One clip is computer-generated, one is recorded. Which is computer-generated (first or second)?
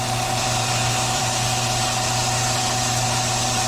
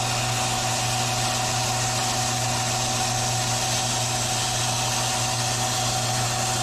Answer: first